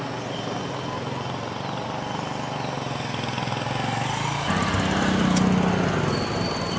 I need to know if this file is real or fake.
real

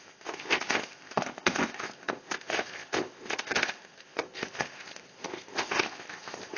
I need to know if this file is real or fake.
fake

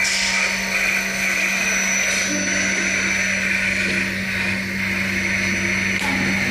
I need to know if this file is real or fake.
real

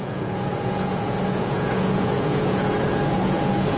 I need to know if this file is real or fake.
fake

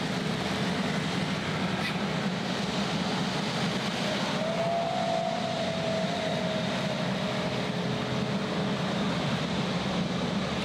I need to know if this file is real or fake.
real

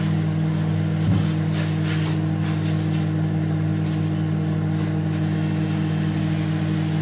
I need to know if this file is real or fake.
real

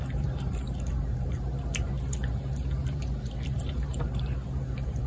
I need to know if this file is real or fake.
fake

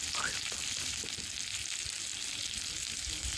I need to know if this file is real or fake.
real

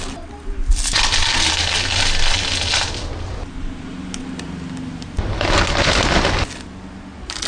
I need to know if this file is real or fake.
real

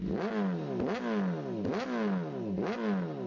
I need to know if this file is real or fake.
real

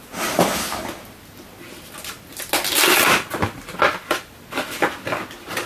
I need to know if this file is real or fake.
real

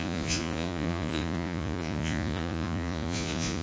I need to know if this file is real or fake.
fake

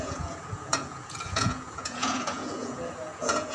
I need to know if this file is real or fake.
fake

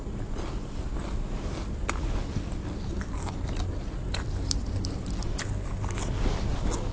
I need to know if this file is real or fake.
real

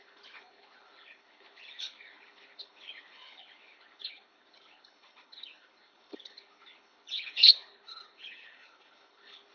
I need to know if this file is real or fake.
fake